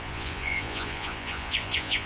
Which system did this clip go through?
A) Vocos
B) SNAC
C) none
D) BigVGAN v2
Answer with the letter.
A